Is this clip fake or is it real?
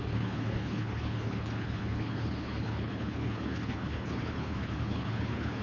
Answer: fake